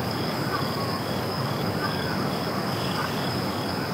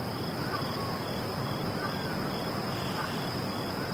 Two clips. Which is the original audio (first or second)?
second